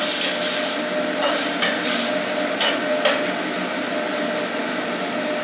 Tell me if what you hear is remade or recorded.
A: recorded